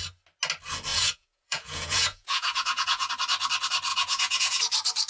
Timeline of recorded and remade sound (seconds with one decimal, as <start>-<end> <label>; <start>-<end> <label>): 0.0-0.9 recorded; 0.9-3.1 remade; 3.1-3.9 recorded; 3.9-4.6 remade; 4.6-5.1 recorded